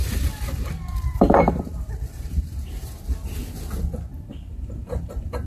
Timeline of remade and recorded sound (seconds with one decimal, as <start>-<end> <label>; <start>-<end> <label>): 0.0-2.9 remade; 2.9-4.1 recorded; 4.1-5.5 remade